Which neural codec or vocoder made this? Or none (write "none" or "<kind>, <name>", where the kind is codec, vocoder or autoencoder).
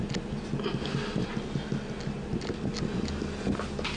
none